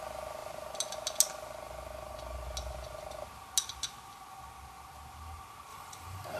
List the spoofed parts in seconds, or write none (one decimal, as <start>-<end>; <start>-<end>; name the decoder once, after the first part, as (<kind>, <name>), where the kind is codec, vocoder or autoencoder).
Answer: 5.7-6.4 (vocoder, BigVGAN v2)